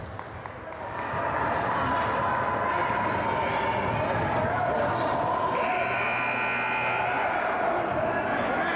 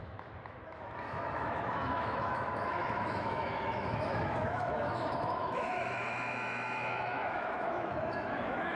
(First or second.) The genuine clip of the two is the first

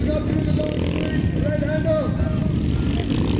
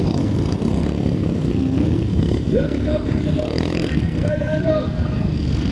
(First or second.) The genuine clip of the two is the first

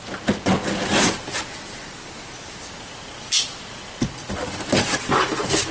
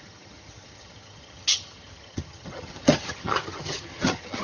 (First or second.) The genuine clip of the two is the first